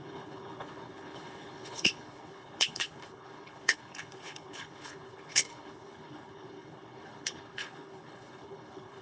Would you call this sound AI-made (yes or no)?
yes